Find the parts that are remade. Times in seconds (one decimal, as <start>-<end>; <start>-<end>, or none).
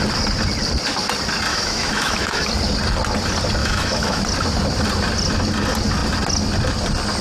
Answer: 1.5-2.5; 3.6-4.2